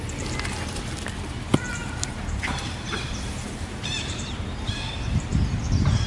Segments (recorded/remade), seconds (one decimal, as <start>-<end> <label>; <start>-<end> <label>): 0.0-1.8 recorded; 1.8-4.7 remade; 4.7-6.1 recorded